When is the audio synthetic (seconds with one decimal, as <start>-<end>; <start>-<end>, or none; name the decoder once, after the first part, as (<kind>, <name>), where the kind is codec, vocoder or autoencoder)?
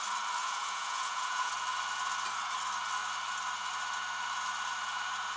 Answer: 0.4-1.5 (vocoder, Vocos)